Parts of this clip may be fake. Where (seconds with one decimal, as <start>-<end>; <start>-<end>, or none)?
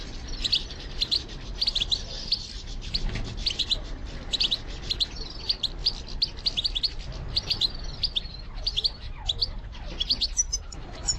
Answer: 0.0-11.2